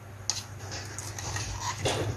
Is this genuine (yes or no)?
yes